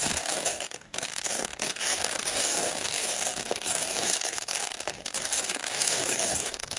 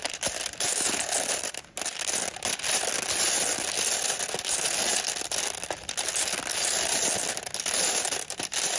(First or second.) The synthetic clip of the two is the first